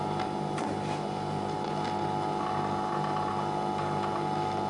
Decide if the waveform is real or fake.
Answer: real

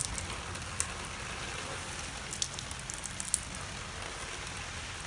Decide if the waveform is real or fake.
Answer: real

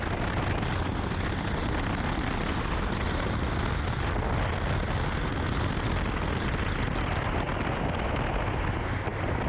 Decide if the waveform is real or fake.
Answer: real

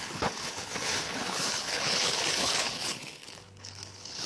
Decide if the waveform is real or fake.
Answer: fake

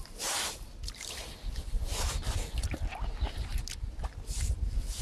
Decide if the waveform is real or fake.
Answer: real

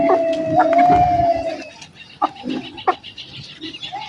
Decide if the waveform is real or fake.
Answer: real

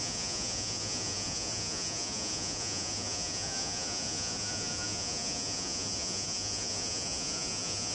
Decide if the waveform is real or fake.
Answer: fake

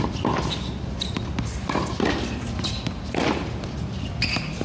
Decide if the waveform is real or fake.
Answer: real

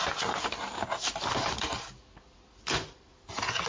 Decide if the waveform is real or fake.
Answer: real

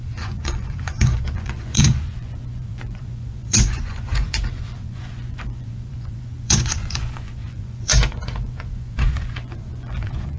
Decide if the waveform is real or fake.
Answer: fake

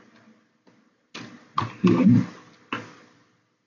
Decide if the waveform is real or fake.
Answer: real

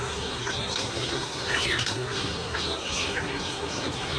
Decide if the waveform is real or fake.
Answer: fake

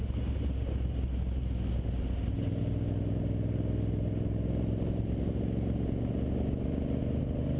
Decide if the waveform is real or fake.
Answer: real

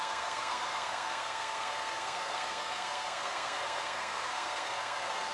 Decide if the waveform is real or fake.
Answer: fake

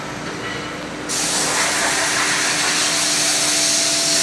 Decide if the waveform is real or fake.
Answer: real